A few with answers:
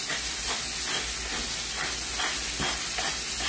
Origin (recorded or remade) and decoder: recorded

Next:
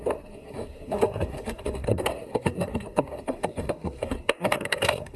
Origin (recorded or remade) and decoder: remade, codec, SNAC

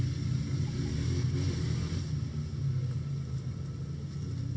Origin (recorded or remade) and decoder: recorded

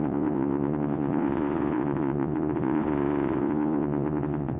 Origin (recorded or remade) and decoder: remade, vocoder, Vocos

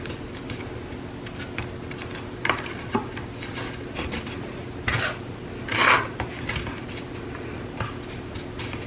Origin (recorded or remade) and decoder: recorded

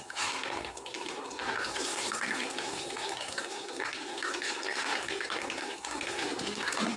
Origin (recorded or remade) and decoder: remade, codec, SNAC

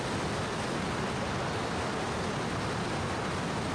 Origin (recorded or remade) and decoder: recorded